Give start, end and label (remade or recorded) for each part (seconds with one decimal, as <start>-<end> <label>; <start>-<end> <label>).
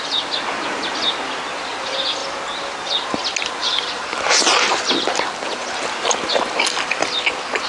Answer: 0.0-3.6 recorded; 3.6-4.7 remade; 4.7-7.7 recorded